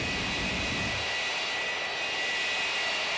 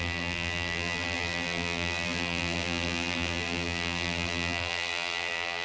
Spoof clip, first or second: second